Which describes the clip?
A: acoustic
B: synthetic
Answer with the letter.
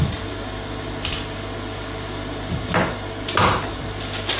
A